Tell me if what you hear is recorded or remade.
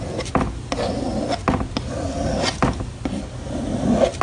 recorded